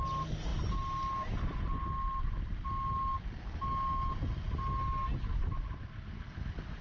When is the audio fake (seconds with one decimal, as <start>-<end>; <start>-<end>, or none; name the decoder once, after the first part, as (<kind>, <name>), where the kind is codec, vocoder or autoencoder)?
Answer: none